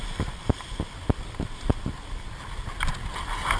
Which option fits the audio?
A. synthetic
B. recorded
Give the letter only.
B